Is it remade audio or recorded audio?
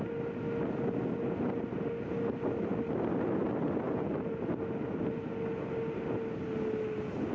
recorded